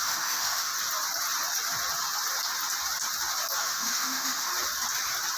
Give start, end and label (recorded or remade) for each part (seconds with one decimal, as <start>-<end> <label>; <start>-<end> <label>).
0.0-0.7 remade; 0.7-3.6 recorded; 3.6-4.5 remade; 4.5-5.4 recorded